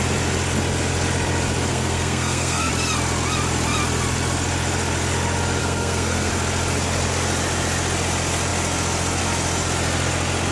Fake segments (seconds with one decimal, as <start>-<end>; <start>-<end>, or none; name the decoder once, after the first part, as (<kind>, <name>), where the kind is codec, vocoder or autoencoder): 1.7-2.7 (codec, SNAC); 5.6-6.3

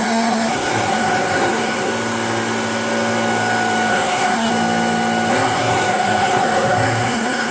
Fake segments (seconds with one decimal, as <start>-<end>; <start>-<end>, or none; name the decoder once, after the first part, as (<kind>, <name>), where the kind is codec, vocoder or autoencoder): 0.0-1.9 (codec, SNAC); 3.9-4.5; 5.3-7.5

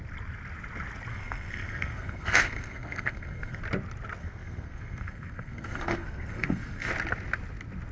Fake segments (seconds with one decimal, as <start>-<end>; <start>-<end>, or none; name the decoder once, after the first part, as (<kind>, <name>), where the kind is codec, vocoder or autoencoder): 1.1-3.6 (codec, SNAC); 4.2-6.9